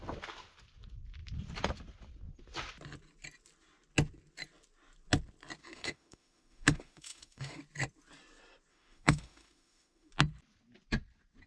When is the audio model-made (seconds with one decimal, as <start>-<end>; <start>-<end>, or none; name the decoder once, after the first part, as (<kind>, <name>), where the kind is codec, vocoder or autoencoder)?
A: 5.6-7.6 (autoencoder, DAC-VAE); 8.7-10.1